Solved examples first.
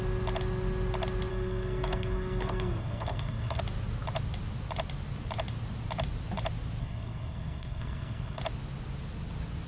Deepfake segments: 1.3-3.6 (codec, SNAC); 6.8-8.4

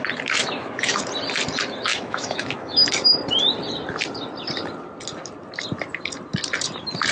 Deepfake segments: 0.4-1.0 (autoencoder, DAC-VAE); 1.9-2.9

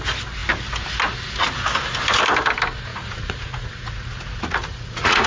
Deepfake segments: 2.9-5.3 (vocoder, Vocos)

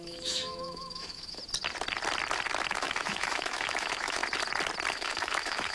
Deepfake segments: 0.0-1.4 (autoencoder, DAC-VAE); 2.7-4.2; 4.9-5.7

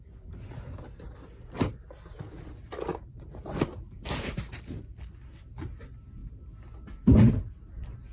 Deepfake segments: 2.9-5.8 (vocoder, BigVGAN v2)